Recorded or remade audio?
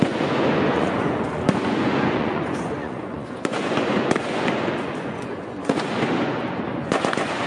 remade